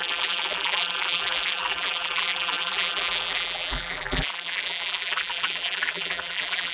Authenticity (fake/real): fake